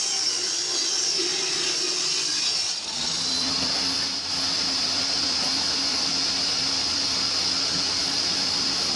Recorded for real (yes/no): yes